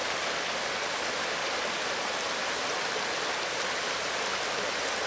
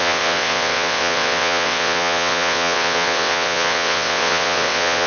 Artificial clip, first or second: second